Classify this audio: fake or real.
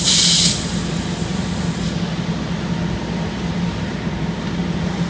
real